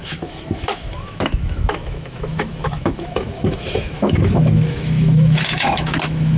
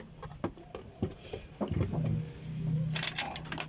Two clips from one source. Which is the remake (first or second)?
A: first